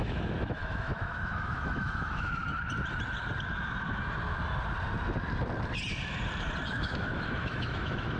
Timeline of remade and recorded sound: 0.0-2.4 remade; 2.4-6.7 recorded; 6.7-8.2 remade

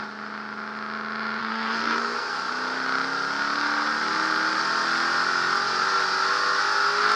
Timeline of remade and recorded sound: 0.0-1.4 recorded; 1.4-2.5 remade; 2.5-7.2 recorded

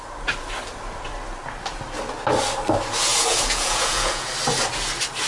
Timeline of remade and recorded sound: 0.0-3.1 recorded; 3.1-4.3 remade; 4.3-5.3 recorded

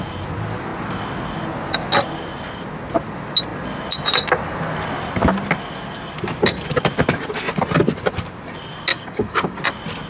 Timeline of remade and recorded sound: 0.0-8.9 recorded; 8.9-9.6 remade; 9.6-10.1 recorded

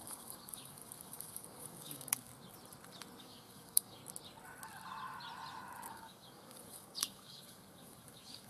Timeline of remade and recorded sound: 0.0-2.3 remade; 2.3-3.2 recorded; 3.2-4.0 remade; 4.0-5.9 recorded; 5.9-8.5 remade